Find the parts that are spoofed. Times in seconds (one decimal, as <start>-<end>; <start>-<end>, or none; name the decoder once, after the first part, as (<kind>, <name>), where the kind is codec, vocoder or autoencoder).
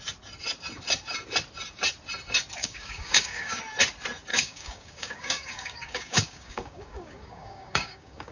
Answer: 2.6-3.6 (codec, DAC); 4.3-8.3